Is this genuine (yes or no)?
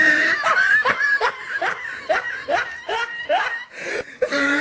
no